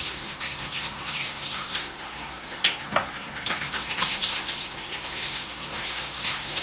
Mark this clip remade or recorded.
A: remade